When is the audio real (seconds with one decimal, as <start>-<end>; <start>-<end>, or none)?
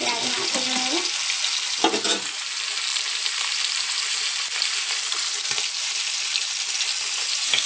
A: 0.0-2.9; 5.6-7.7